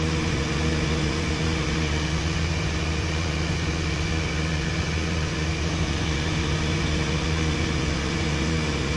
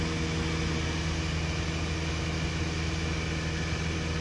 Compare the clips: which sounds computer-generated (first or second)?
first